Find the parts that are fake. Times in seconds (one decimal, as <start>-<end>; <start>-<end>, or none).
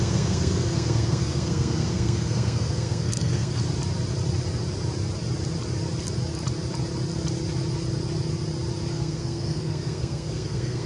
0.0-3.6; 8.9-10.9